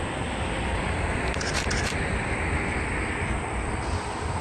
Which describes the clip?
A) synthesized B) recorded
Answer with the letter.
B